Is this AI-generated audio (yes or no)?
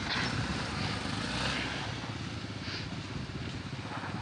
no